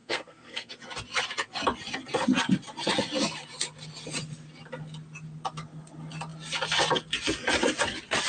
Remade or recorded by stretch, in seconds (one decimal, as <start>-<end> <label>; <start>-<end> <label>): 0.0-0.7 remade; 0.7-8.3 recorded